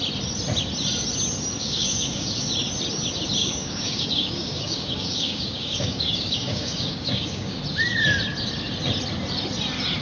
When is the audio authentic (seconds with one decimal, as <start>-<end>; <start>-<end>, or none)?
0.0-1.6; 2.3-3.4; 7.6-10.0